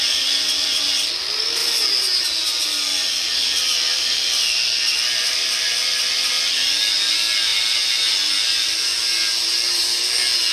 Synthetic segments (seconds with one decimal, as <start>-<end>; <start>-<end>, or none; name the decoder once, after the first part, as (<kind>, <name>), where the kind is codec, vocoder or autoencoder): none